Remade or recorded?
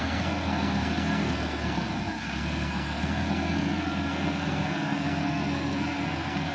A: remade